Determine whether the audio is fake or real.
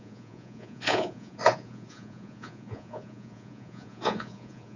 fake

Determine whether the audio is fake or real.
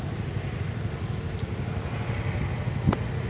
real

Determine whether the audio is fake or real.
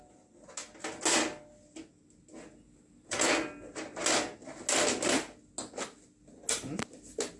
real